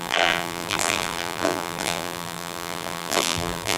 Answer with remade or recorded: remade